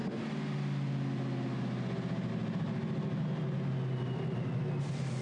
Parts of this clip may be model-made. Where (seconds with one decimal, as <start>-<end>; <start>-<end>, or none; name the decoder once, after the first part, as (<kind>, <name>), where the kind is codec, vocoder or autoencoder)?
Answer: none